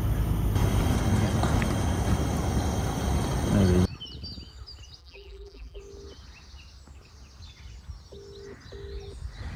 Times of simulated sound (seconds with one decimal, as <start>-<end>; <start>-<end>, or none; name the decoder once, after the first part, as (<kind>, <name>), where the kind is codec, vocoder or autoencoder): 5.0-5.8 (vocoder, BigVGAN v2)